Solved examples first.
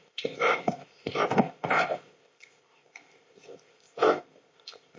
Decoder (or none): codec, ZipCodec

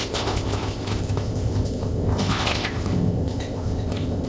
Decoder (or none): codec, ZipCodec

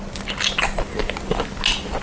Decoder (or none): none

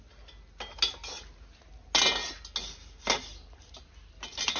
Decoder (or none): none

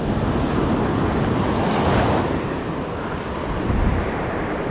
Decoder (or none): none